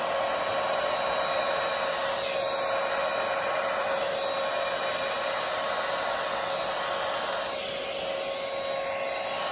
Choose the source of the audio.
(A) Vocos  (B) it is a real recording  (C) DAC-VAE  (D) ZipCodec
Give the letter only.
B